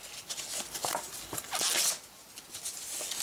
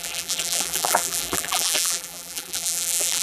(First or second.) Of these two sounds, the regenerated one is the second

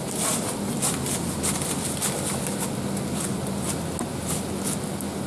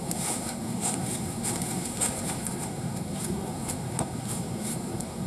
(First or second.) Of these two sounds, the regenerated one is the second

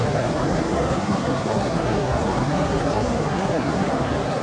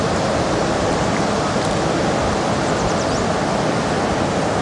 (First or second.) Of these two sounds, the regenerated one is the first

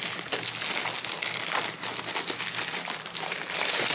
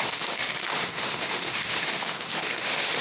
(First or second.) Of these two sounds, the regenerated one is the second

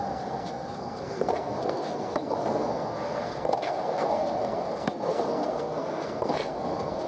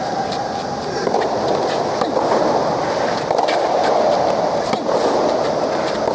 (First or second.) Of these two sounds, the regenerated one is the first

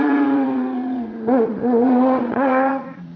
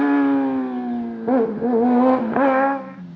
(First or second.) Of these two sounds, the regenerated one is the first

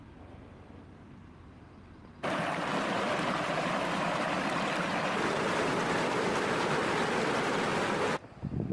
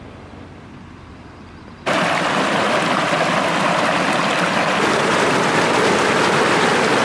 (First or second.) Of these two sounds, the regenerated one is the first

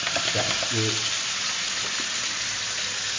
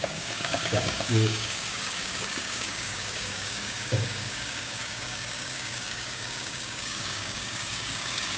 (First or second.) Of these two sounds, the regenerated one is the second